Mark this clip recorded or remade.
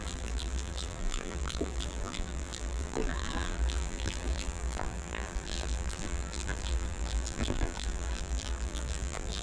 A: remade